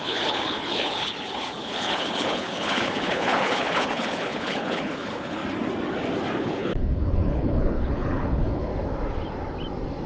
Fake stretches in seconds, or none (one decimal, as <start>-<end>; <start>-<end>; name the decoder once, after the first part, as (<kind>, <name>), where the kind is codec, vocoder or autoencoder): 0.0-5.4 (codec, HILCodec); 6.4-8.7